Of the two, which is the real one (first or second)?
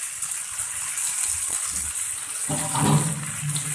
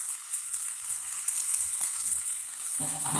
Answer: first